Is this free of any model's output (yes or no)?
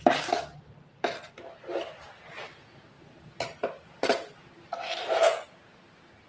yes